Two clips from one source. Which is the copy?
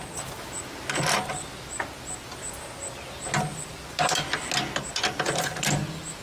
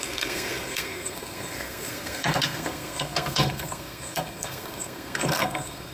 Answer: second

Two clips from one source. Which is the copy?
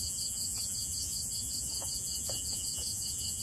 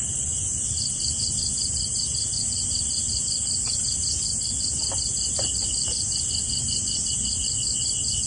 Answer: first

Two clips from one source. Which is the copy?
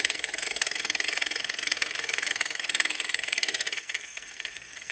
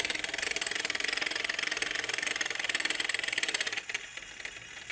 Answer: first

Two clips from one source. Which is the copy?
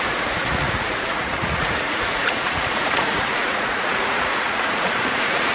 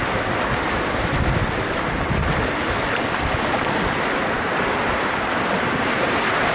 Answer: first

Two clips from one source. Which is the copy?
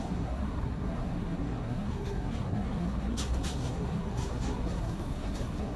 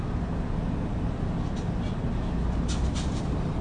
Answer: first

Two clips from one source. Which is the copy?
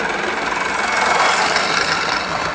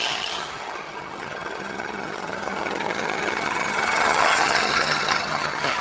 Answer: second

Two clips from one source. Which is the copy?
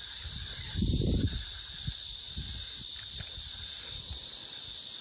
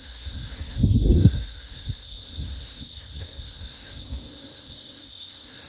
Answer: second